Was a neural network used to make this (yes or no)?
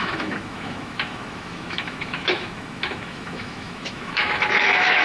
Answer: yes